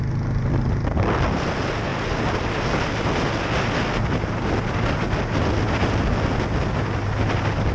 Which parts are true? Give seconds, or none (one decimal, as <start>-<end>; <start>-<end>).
0.0-7.7